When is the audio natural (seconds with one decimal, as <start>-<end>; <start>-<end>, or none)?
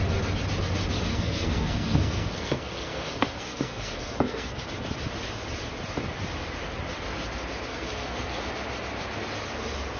0.0-1.1; 4.6-7.7; 8.4-10.0